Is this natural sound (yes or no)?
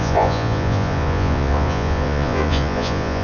no